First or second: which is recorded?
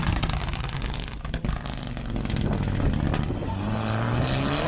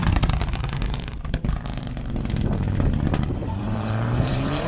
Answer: first